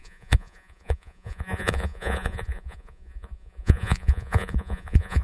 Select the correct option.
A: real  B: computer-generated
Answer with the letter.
B